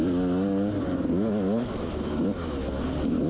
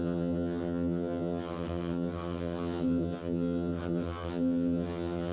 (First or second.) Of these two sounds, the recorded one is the first